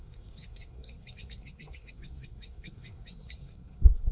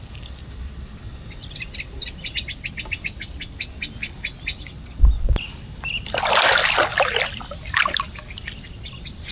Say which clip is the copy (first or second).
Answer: first